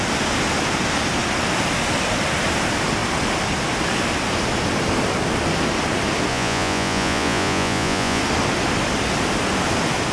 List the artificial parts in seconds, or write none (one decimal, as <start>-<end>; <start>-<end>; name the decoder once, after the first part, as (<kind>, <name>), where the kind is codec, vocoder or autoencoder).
6.3-8.2 (vocoder, Vocos)